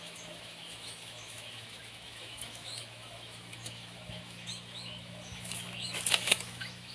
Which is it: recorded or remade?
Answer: remade